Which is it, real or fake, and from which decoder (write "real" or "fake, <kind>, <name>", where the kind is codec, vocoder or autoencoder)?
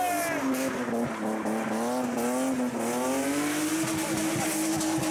real